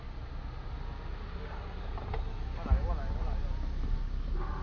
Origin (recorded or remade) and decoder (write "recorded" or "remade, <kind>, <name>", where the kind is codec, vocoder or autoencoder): recorded